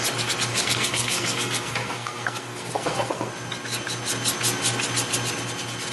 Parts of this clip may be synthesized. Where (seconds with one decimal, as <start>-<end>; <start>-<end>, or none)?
0.5-3.3